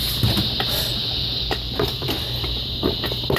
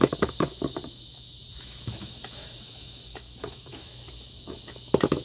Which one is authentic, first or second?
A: first